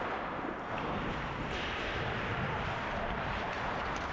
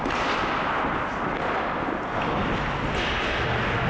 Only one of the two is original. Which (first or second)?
second